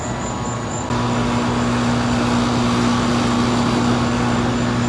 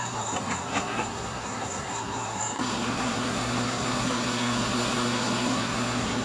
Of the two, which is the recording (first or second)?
first